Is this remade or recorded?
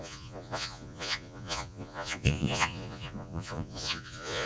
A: remade